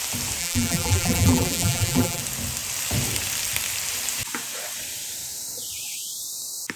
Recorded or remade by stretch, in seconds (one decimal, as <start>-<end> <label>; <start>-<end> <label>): 0.0-0.4 recorded; 0.4-2.2 remade; 2.2-6.8 recorded